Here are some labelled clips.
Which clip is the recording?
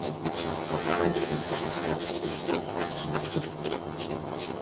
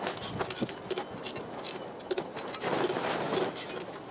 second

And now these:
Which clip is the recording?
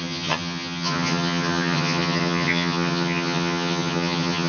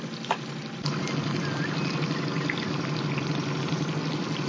second